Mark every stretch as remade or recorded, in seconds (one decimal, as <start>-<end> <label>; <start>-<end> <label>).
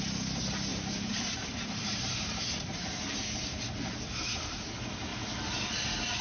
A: 0.0-0.7 recorded; 0.7-2.4 remade; 2.4-6.2 recorded